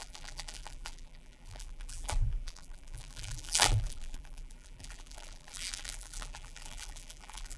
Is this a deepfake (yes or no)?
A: yes